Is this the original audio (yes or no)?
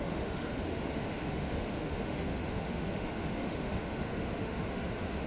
no